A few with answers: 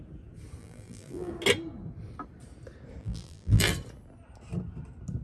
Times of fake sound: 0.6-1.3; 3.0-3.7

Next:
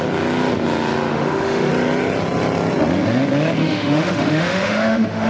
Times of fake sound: 1.1-1.7; 3.6-5.3

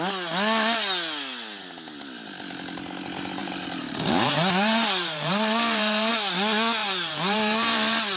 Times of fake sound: 3.4-6.1; 6.8-8.2